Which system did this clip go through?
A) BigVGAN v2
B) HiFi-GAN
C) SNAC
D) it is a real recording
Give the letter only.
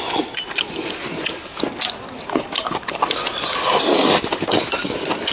D